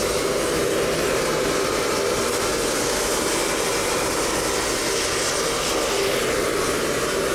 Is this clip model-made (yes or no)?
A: no